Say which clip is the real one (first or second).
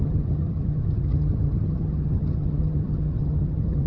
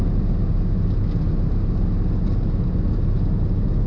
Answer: second